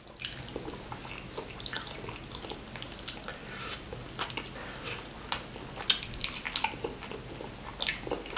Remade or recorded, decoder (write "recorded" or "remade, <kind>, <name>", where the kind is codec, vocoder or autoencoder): recorded